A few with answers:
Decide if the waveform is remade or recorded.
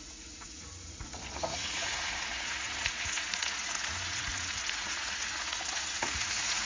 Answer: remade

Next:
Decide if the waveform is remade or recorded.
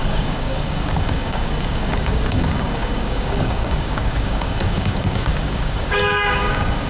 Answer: remade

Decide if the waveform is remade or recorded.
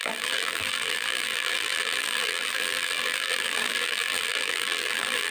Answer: remade